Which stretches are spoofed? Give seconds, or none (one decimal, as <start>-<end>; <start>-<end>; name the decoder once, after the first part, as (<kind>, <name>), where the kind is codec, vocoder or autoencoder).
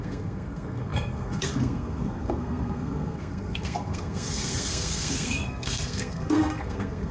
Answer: 0.0-7.1 (codec, SNAC)